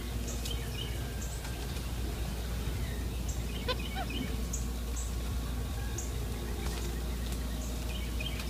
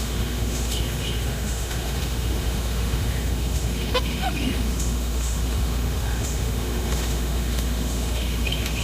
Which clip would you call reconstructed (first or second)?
second